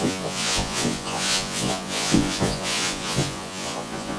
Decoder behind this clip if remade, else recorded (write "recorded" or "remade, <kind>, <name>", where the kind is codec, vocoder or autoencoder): remade, vocoder, Vocos